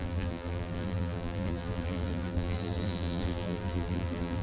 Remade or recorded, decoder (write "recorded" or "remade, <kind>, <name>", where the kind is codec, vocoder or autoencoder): remade, vocoder, BigVGAN v2